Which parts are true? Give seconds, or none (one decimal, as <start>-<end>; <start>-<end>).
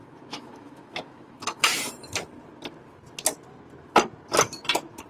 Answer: 1.7-5.1